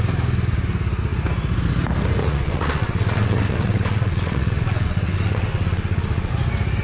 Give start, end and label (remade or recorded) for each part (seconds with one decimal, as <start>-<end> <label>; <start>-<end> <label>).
0.0-2.2 recorded; 2.2-6.3 remade; 6.3-6.8 recorded